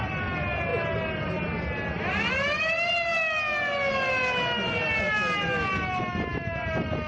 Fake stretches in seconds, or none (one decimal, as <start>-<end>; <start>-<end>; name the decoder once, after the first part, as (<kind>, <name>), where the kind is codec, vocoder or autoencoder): none